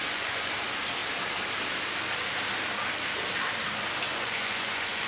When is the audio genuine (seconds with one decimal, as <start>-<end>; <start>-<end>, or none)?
0.5-4.1